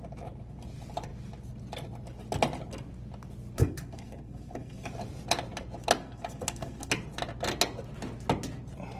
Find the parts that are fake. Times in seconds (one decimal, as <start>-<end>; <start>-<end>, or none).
3.6-4.9; 6.0-6.9